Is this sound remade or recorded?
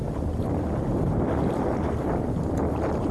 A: remade